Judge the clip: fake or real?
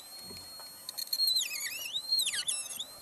real